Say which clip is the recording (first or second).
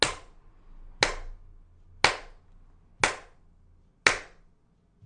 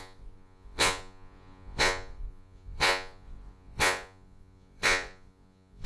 first